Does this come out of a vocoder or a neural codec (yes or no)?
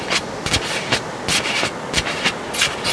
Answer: no